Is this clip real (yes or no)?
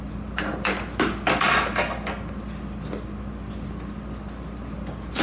yes